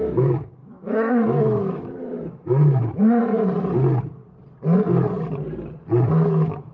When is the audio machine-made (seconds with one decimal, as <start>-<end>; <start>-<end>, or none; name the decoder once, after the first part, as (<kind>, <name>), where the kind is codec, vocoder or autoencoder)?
0.0-3.2 (autoencoder, DAC-VAE); 6.1-6.7